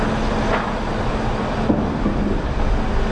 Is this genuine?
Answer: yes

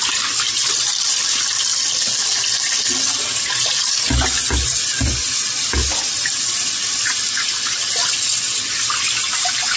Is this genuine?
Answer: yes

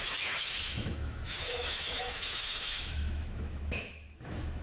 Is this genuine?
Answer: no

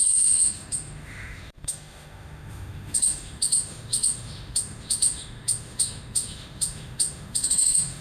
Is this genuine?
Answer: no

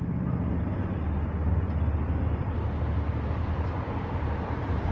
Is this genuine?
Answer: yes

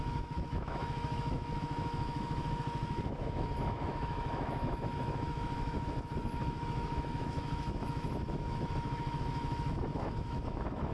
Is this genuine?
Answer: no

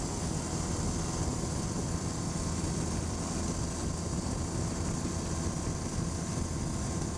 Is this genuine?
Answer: yes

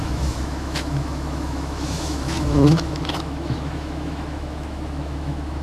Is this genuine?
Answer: no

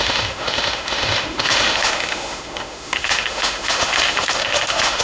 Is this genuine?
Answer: no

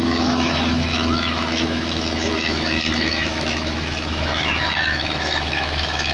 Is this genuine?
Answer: no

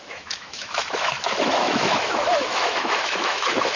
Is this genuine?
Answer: no